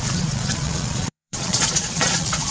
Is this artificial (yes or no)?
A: yes